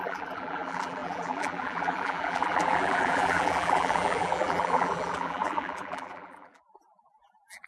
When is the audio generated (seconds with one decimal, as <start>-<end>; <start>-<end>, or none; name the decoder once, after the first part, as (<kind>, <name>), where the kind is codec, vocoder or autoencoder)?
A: 0.0-7.7 (vocoder, BigVGAN v2)